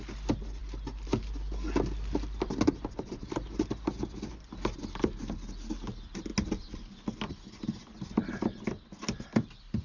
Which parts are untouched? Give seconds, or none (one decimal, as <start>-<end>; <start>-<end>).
0.0-9.8